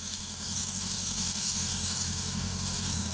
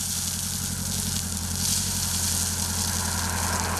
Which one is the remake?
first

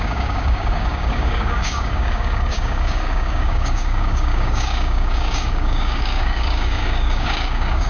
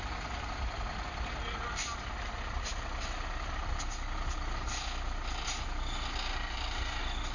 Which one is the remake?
first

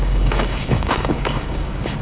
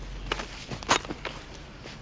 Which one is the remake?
first